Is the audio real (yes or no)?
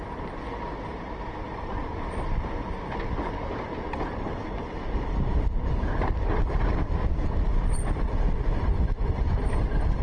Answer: yes